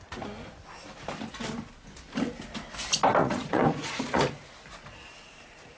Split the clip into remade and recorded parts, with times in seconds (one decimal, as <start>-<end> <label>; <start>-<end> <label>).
0.0-3.2 recorded; 3.2-4.2 remade; 4.2-5.8 recorded